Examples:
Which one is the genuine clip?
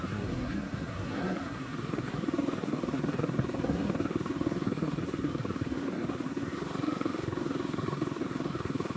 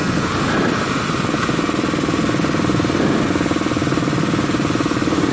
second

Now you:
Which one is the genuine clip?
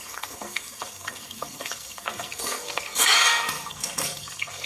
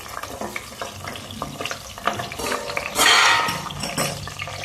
second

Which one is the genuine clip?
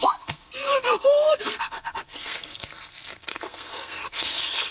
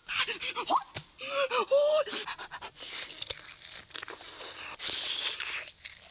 second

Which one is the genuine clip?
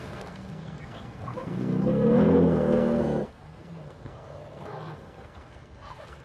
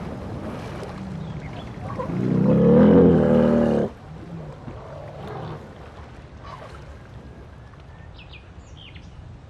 second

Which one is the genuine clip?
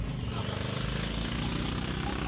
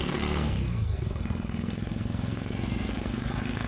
first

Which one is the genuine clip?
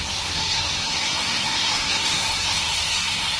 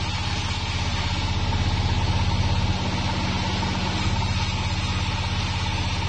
second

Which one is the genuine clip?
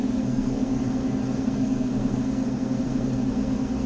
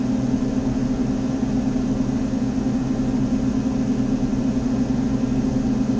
second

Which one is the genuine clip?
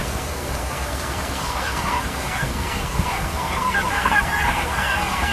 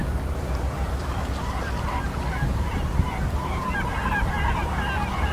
second